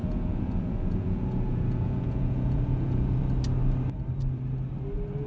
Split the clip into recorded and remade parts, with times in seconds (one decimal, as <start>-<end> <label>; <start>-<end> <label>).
0.0-3.2 remade; 3.2-5.3 recorded